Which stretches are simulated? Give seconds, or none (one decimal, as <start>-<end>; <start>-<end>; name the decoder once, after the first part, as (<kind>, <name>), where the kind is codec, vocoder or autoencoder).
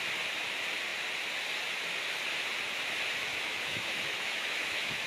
3.3-5.1 (autoencoder, DAC-VAE)